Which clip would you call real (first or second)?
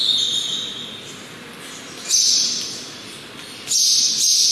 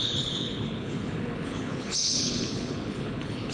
first